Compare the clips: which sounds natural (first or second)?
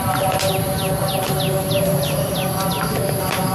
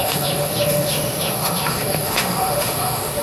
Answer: first